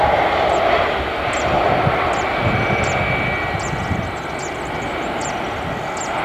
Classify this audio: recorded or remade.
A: recorded